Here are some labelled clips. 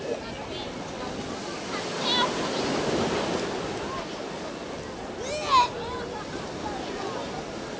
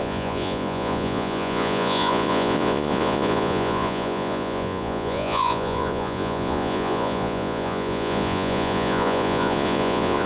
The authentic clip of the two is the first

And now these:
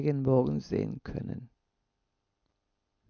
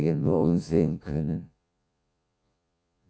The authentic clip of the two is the first